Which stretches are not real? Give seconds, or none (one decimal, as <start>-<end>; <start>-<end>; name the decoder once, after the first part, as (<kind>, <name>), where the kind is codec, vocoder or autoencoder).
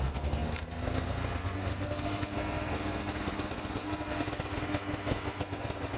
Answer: 0.0-6.0 (codec, SNAC)